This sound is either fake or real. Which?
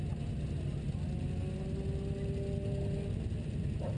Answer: real